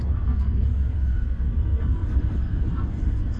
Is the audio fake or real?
fake